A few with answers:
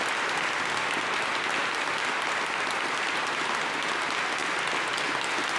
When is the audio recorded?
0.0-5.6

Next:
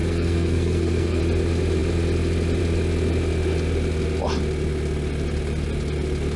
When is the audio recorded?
1.2-6.4